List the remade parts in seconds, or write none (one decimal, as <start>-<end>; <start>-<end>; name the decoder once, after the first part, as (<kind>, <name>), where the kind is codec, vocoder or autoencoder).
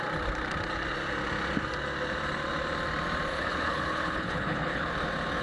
3.3-4.9 (codec, HILCodec)